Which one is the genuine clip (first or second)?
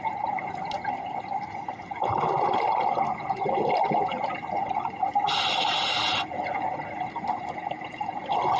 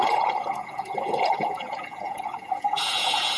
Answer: first